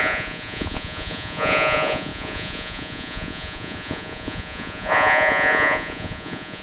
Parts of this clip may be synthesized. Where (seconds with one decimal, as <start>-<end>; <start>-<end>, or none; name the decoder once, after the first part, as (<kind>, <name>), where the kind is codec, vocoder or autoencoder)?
0.0-6.6 (vocoder, Vocos)